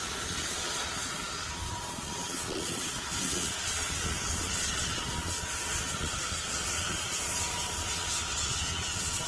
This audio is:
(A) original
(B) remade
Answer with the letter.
B